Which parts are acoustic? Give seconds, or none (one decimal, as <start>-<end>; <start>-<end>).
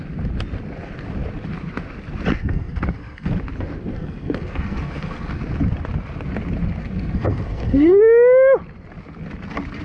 0.0-2.3; 3.3-3.9; 5.4-6.8; 8.0-9.8